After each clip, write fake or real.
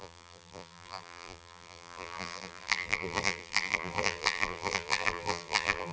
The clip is fake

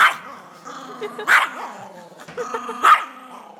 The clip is real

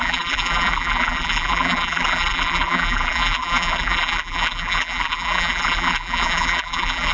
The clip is fake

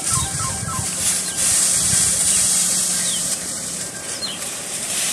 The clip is fake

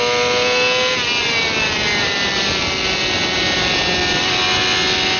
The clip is real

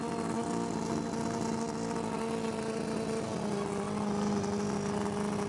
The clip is real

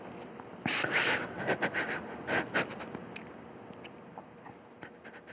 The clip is real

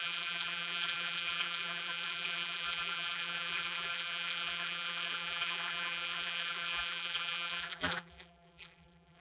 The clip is fake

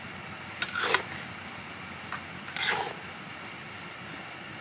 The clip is real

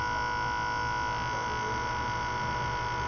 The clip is real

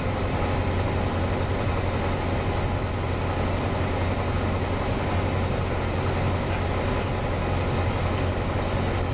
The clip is real